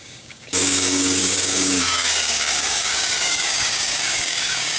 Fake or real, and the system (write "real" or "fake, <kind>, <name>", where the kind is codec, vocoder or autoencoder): fake, codec, DAC